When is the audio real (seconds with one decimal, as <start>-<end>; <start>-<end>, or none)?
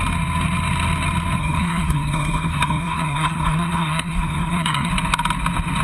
0.0-1.4; 4.9-5.8